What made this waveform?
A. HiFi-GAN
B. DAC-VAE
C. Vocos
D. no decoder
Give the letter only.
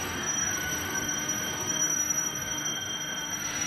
B